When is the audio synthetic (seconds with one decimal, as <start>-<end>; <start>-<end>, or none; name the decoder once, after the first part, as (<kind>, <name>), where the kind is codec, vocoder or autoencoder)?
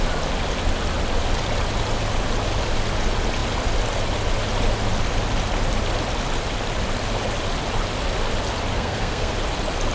8.7-9.3 (codec, SNAC)